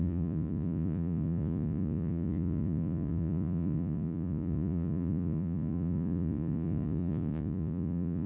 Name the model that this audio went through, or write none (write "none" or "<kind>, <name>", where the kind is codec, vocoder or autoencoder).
vocoder, Vocos